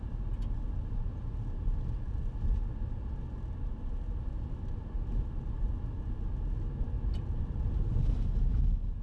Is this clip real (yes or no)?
yes